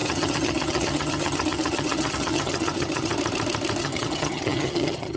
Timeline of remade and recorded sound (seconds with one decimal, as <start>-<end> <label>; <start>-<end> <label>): 0.0-3.1 remade; 3.1-3.8 recorded; 3.8-5.2 remade